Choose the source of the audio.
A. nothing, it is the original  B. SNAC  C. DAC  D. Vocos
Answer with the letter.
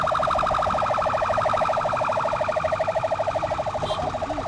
A